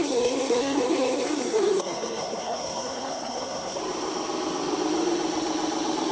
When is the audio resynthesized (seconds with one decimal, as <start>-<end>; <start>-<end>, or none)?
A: 0.0-3.8